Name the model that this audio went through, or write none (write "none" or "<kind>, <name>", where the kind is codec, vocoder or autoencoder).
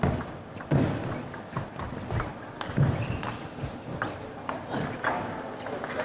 none